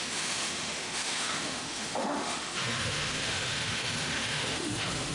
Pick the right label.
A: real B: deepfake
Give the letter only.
B